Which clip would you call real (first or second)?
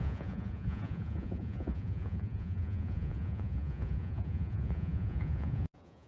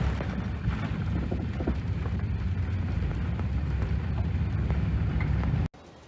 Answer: second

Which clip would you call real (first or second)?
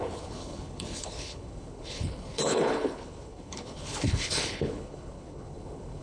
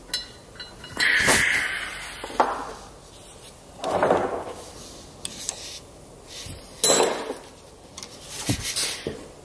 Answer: second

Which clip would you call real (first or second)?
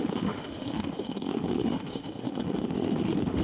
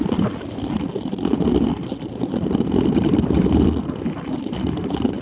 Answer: second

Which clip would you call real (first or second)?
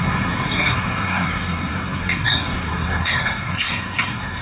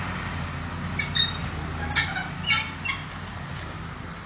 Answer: second